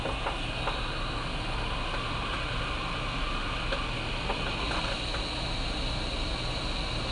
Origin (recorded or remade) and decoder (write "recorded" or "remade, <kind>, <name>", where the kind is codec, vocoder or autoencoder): recorded